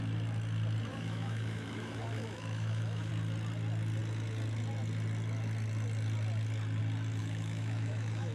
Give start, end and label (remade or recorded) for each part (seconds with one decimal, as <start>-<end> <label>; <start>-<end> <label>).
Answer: 0.0-0.9 recorded; 0.9-3.1 remade; 3.1-7.2 recorded; 7.2-8.3 remade